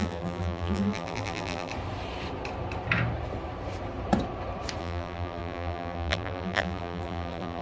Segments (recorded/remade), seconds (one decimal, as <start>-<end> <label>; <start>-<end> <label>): 0.0-1.7 remade; 1.7-4.8 recorded; 4.8-7.6 remade